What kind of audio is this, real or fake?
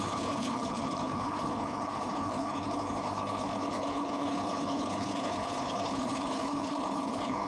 fake